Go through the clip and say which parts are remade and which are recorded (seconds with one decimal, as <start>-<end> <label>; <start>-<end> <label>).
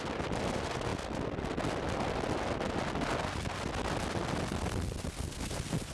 0.0-5.9 recorded